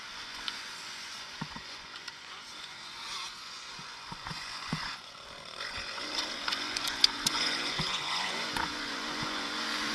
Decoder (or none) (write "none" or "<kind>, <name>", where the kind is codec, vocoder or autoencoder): vocoder, Vocos